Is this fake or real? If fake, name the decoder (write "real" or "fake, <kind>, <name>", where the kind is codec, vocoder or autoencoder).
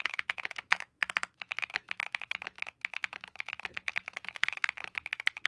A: fake, autoencoder, DAC-VAE